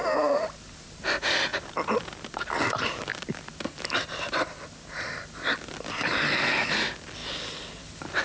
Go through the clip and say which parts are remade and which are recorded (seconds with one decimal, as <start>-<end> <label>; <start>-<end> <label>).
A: 0.0-3.1 recorded; 3.1-4.5 remade; 4.5-7.2 recorded; 7.2-8.2 remade